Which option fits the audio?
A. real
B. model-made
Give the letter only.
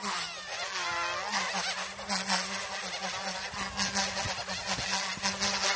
A